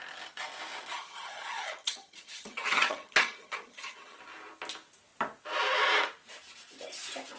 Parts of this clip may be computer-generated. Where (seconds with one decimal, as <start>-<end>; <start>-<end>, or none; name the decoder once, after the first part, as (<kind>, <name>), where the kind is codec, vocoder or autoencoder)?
0.9-4.2 (vocoder, HiFi-GAN)